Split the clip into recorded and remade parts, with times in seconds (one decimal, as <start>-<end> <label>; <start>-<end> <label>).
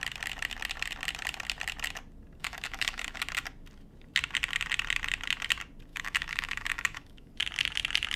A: 0.0-2.4 recorded; 2.4-3.2 remade; 3.2-5.9 recorded; 5.9-7.3 remade; 7.3-8.2 recorded